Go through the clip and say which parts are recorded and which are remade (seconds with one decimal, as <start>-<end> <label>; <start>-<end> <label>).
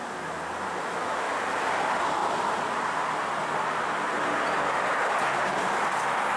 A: 0.0-0.8 recorded; 0.8-1.3 remade; 1.3-6.4 recorded